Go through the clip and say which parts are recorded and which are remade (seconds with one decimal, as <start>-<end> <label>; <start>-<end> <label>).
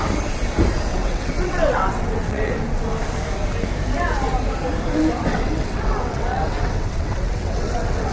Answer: 0.0-0.9 recorded; 0.9-2.5 remade; 2.5-5.2 recorded; 5.2-8.1 remade